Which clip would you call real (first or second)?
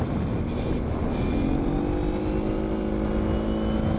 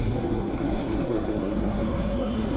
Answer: first